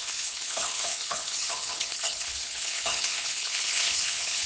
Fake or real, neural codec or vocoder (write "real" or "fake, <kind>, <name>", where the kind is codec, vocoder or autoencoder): fake, codec, HILCodec